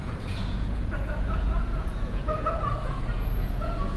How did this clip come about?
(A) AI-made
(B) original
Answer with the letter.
A